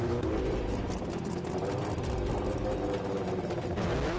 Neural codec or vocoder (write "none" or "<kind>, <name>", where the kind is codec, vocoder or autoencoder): none